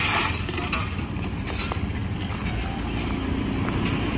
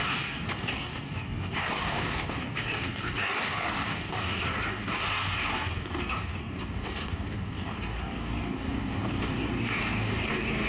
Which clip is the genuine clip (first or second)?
first